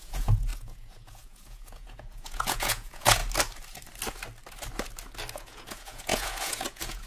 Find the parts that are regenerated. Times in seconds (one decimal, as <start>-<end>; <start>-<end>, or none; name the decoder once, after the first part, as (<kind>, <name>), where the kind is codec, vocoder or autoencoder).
0.0-3.2 (vocoder, Vocos); 5.3-7.1